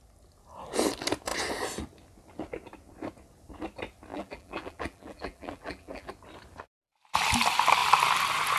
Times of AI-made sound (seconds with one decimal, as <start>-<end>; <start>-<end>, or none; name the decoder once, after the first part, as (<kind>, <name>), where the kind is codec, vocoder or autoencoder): 4.1-6.1 (vocoder, BigVGAN v2)